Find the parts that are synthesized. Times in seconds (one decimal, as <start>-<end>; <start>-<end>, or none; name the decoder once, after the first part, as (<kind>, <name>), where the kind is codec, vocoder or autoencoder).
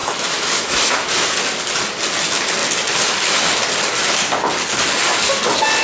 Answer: 0.0-1.4 (autoencoder, DAC-VAE)